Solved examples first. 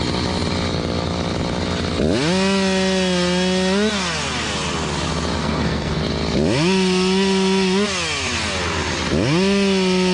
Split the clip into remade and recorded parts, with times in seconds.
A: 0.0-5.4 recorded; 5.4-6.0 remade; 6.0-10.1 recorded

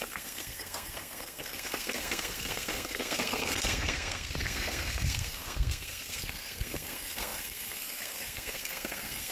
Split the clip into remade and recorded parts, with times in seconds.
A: 0.0-9.3 remade

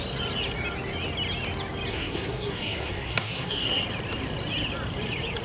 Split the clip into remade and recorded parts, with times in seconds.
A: 0.0-1.9 recorded; 1.9-3.8 remade; 3.8-5.4 recorded

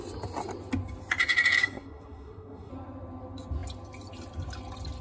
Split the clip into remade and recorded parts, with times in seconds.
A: 0.0-1.6 recorded; 1.6-2.7 remade; 2.7-5.0 recorded

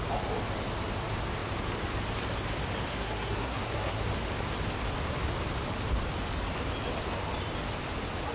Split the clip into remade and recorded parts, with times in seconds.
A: 0.0-2.9 recorded; 2.9-4.1 remade; 4.1-8.3 recorded

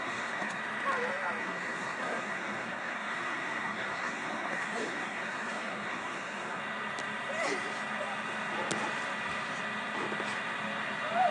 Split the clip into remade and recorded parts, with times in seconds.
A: 0.0-0.6 remade; 0.6-1.4 recorded; 1.4-6.6 remade; 6.6-11.3 recorded

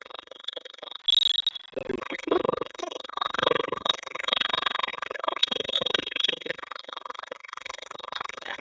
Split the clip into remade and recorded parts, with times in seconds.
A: 0.0-1.0 remade; 1.0-2.0 recorded; 2.0-8.6 remade

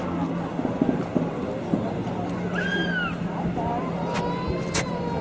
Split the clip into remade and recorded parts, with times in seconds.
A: 0.0-5.2 recorded